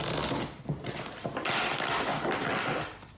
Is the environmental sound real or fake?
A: real